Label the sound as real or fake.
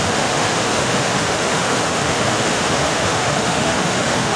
fake